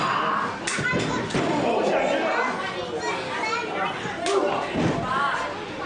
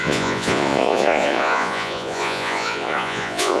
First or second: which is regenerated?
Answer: second